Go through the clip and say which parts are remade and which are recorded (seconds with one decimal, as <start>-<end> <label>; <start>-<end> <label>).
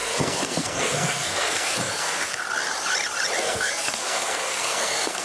0.0-2.4 remade; 2.4-3.4 recorded; 3.4-5.2 remade